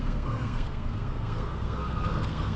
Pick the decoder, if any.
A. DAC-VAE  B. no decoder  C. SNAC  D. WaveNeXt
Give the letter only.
C